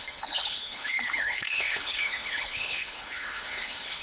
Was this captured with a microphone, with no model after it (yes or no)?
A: no